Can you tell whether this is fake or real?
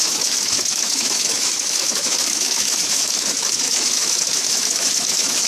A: fake